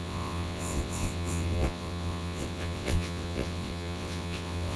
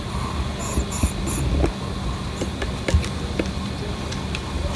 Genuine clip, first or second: second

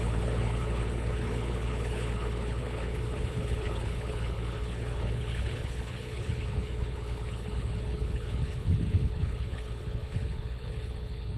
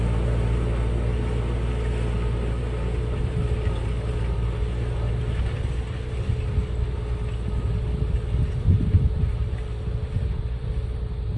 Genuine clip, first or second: second